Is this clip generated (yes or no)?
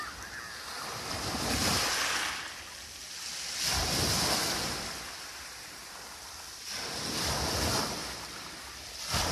no